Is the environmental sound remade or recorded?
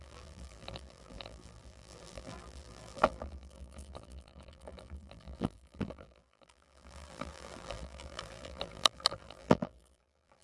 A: remade